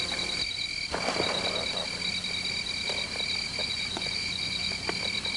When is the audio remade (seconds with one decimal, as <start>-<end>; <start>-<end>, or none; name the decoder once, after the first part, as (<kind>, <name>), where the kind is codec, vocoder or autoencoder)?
3.6-4.7 (vocoder, Vocos)